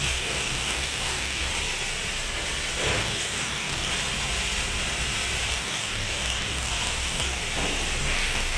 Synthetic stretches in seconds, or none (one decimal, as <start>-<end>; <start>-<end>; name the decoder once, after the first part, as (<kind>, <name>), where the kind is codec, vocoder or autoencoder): 0.0-1.5 (codec, DAC); 3.0-3.9; 5.5-7.4; 8.0-8.6